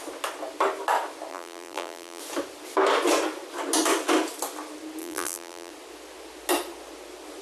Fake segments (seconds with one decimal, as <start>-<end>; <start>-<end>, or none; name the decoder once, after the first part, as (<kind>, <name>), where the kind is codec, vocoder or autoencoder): 1.3-2.2 (vocoder, BigVGAN v2); 5.0-5.7